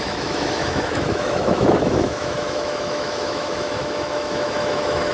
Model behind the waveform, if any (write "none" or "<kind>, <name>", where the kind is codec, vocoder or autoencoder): autoencoder, DAC-VAE